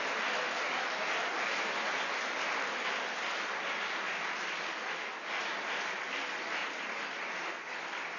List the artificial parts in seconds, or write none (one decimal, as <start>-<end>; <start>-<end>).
none